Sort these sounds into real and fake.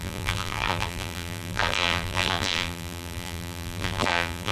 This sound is fake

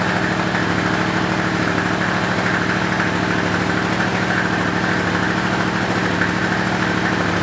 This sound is fake